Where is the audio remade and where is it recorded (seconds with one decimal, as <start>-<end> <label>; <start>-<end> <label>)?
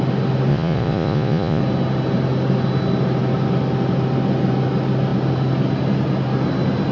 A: 0.0-0.5 recorded; 0.5-1.6 remade; 1.6-6.9 recorded